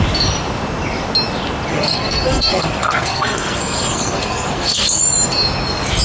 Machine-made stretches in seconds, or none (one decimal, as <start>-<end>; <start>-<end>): 1.7-5.0